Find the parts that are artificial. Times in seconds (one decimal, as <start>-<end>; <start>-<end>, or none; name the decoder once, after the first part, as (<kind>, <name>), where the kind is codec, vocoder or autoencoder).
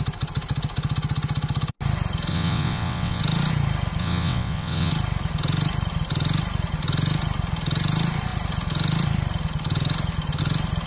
2.3-3.2 (vocoder, WaveNeXt); 4.0-4.9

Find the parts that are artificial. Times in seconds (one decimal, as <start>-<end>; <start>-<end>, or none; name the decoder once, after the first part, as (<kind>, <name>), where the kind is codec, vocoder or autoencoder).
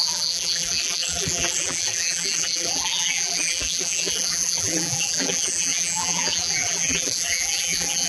0.0-8.1 (vocoder, BigVGAN v2)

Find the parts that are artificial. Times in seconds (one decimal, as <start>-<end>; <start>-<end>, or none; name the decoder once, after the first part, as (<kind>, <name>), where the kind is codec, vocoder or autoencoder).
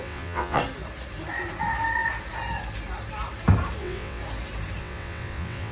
0.0-0.6 (vocoder, WaveNeXt); 3.8-4.2; 4.8-5.7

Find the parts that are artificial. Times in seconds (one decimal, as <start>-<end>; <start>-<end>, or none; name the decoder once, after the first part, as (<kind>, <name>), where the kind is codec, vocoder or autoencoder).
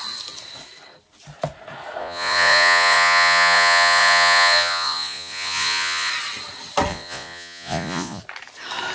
2.0-6.1 (vocoder, Vocos); 6.9-8.2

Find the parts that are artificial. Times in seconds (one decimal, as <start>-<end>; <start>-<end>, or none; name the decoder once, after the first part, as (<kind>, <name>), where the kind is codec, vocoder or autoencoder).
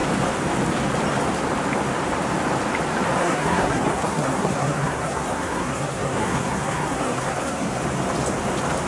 3.2-7.8 (codec, SNAC)